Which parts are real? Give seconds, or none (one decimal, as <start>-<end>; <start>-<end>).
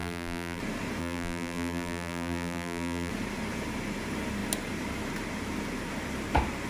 0.6-1.0; 3.1-6.7